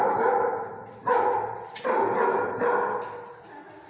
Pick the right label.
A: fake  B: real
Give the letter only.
B